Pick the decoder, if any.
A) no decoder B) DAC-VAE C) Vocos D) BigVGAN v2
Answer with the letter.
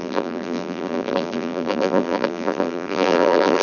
D